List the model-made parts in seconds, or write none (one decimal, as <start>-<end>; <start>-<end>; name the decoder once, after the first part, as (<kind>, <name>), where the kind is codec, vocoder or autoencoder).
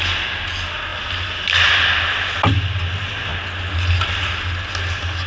none